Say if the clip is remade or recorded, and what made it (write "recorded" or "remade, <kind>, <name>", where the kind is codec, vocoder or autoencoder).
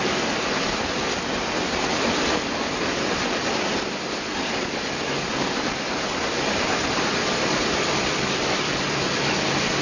recorded